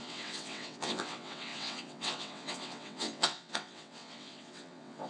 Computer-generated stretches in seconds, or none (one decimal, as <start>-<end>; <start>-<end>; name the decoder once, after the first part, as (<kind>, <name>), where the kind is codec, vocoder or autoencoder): 0.0-5.1 (vocoder, WaveNeXt)